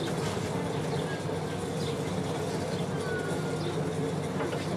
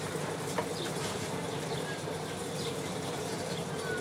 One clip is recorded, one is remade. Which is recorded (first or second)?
first